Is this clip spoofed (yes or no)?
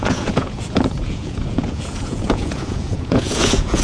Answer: yes